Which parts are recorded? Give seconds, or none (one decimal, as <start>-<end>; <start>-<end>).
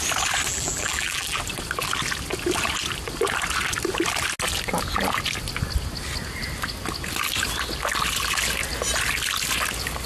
0.0-0.5; 1.4-10.1